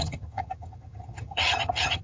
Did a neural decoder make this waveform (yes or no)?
yes